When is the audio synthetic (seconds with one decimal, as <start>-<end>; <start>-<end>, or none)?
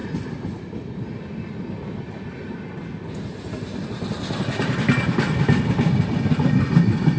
none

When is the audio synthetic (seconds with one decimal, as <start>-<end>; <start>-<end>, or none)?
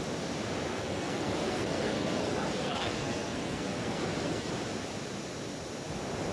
0.7-4.5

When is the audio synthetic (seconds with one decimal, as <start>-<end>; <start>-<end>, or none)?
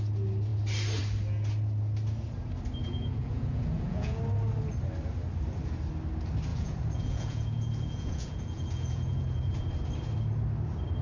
2.8-4.2; 6.5-9.7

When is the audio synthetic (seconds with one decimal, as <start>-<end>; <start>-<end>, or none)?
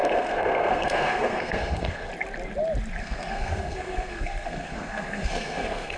0.0-2.1; 3.0-6.0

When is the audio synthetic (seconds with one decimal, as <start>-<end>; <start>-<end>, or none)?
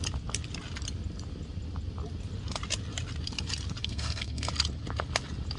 3.8-4.5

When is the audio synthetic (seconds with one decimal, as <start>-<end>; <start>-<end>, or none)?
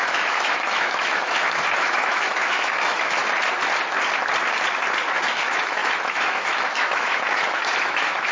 0.0-3.2; 5.1-8.3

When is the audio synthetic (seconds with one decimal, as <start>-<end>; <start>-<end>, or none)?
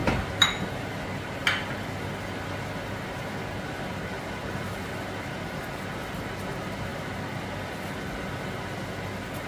none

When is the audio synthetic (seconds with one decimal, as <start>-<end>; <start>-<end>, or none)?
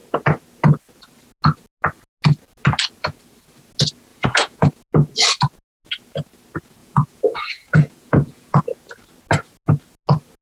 4.1-4.7; 6.8-8.6